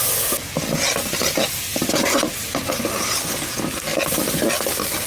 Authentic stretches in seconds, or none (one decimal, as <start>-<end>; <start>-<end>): 0.0-1.7; 2.7-3.9; 4.5-5.1

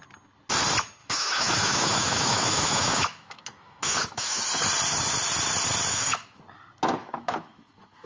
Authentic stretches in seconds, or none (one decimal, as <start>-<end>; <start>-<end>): 0.0-1.0; 4.4-5.9; 6.4-7.0

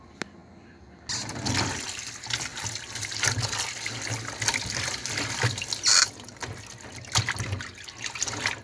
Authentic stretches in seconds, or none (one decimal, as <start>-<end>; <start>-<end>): 0.0-8.6